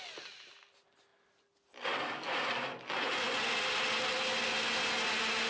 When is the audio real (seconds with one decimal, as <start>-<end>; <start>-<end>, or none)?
0.0-5.5